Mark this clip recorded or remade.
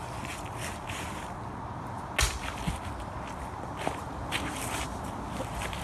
recorded